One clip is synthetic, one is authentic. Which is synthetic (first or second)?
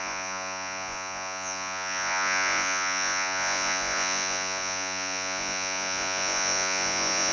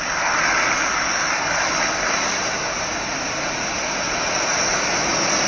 first